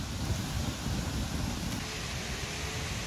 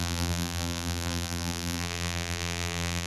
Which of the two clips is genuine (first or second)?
first